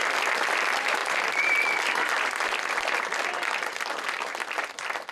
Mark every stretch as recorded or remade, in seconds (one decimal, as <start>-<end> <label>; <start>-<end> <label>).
0.0-5.1 recorded